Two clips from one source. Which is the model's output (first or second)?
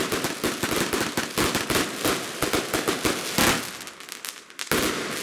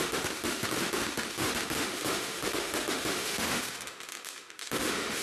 second